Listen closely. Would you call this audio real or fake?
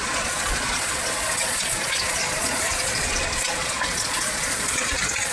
fake